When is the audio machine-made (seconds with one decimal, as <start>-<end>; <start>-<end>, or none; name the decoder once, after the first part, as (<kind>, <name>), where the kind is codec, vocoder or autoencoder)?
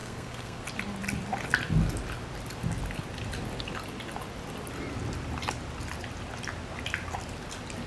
0.0-0.6 (codec, SNAC)